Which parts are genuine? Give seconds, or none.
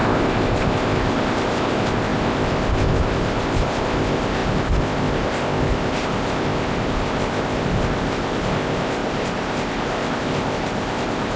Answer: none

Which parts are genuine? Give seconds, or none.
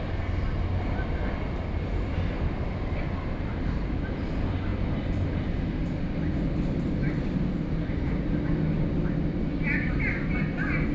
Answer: 0.0-10.9